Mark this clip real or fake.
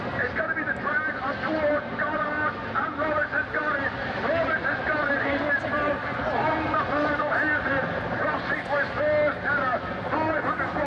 real